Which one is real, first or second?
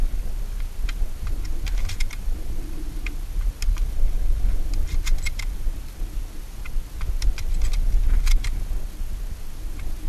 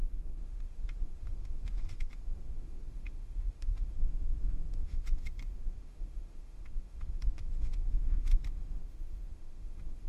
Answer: first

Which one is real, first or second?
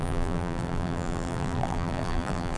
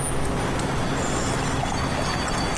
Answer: second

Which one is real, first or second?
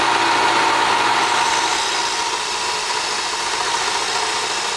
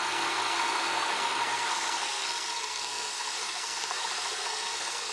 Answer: first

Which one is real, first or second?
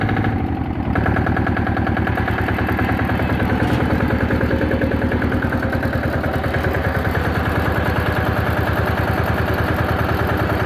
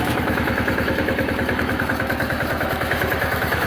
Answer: first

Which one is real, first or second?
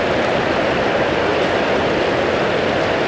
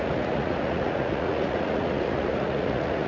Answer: first